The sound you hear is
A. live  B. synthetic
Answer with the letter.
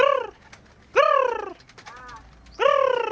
A